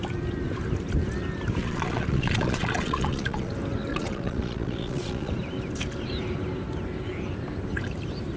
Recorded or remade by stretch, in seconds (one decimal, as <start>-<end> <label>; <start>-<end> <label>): 0.0-1.6 recorded; 1.6-3.5 remade; 3.5-3.9 recorded; 3.9-5.3 remade; 5.3-8.4 recorded